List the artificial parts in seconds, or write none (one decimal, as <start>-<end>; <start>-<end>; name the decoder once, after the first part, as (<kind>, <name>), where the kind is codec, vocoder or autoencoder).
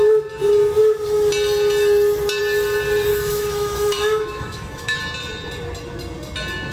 3.1-5.0 (autoencoder, DAC-VAE)